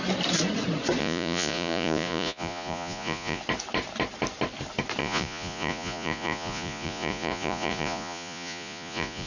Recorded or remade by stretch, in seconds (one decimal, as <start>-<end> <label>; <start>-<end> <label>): 0.0-1.0 recorded; 1.0-3.4 remade; 3.4-5.0 recorded; 5.0-9.3 remade